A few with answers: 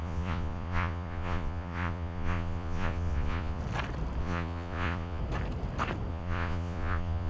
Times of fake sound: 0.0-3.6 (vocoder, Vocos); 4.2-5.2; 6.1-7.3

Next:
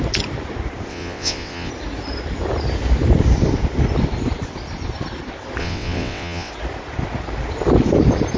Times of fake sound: 0.9-1.7 (vocoder, WaveNeXt); 5.6-6.5

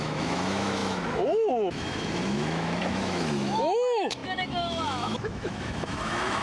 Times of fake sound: 0.0-6.4 (autoencoder, DAC-VAE)

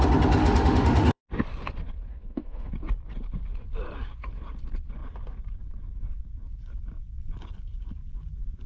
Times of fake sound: 0.4-1.2 (autoencoder, DAC-VAE); 2.1-2.7

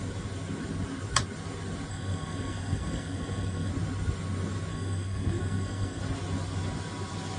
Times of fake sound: 1.9-3.7 (codec, SNAC); 4.7-6.0

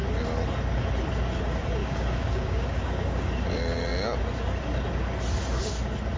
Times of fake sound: 1.8-3.3 (codec, DAC)

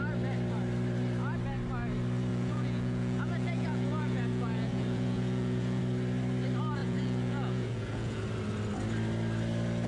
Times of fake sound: 2.3-5.8 (vocoder, Vocos); 6.8-8.2

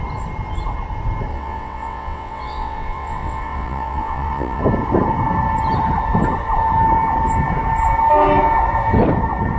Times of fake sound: 1.3-4.6 (vocoder, WaveNeXt)